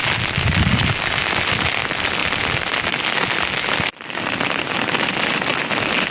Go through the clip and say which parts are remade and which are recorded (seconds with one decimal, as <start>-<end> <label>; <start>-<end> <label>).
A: 0.0-6.1 recorded